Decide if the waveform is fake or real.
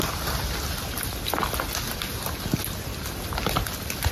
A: real